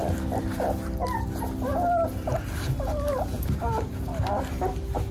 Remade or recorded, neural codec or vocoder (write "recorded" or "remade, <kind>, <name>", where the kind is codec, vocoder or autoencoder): recorded